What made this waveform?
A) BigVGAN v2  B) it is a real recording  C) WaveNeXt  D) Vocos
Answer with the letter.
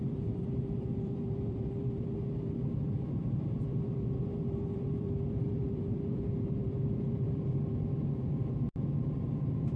A